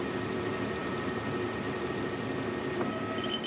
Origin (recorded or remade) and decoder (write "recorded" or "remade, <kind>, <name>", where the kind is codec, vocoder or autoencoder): recorded